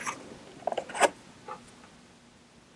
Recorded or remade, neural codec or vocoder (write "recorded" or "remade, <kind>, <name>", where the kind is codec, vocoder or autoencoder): recorded